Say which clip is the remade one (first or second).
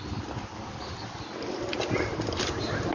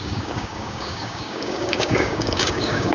second